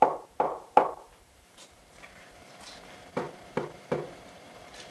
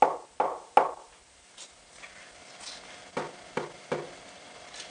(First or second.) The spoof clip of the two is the first